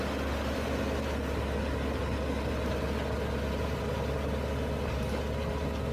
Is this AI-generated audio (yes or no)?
no